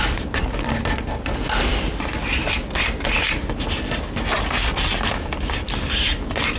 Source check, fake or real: real